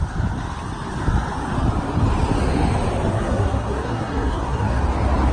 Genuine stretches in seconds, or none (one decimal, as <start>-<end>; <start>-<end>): 0.0-3.1; 4.8-5.3